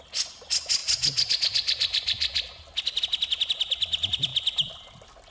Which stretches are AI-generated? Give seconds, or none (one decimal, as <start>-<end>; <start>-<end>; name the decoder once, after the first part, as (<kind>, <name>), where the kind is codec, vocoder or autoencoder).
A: none